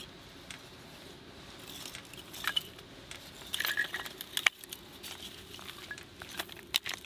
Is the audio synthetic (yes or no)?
no